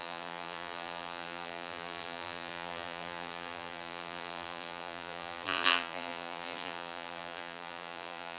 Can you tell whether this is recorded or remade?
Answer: remade